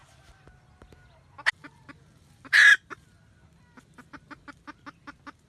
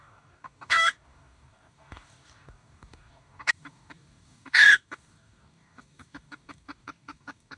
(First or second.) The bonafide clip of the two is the first